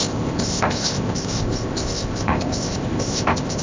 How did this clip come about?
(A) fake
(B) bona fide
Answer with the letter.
A